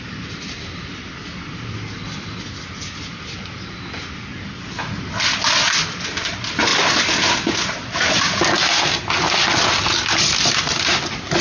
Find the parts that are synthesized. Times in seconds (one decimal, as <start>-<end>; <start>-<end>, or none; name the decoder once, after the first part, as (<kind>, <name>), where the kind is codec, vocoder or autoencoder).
6.7-7.3 (vocoder, BigVGAN v2)